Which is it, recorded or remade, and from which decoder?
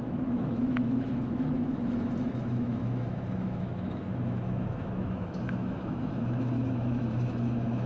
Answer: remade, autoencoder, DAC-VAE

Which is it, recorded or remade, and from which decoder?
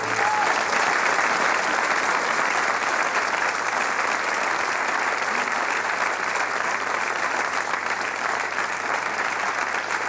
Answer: recorded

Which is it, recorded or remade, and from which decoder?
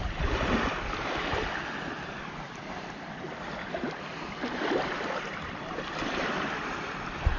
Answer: remade, vocoder, BigVGAN v2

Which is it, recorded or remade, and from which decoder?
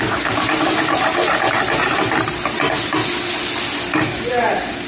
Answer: recorded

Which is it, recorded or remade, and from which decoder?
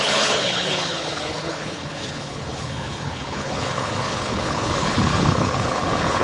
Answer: remade, codec, HILCodec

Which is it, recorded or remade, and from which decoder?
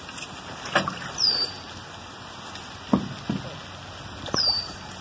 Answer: recorded